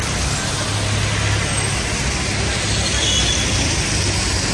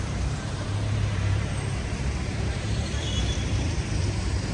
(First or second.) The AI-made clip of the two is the second